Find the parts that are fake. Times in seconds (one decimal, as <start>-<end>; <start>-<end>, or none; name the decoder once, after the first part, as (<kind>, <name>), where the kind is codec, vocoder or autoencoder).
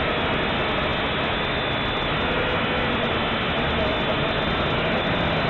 none